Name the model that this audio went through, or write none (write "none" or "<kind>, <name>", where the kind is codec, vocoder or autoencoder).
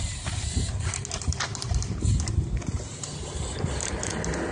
vocoder, BigVGAN v2